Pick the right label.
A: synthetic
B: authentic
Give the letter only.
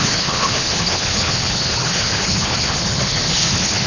A